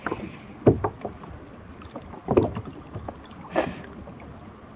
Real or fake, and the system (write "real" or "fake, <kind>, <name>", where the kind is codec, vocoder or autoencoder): real